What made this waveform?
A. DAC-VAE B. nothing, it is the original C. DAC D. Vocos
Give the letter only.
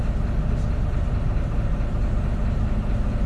B